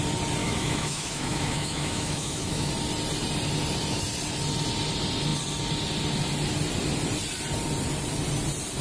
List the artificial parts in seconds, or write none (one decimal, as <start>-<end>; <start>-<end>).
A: 0.4-2.7